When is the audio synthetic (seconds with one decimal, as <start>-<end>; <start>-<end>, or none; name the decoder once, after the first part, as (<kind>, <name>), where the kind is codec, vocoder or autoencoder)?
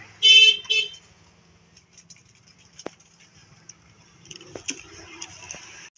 none